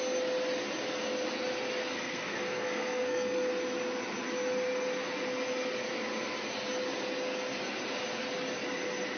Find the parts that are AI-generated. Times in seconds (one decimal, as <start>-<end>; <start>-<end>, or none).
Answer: 1.8-3.5